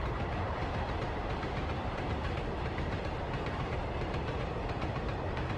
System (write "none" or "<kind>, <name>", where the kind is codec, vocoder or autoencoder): vocoder, BigVGAN v2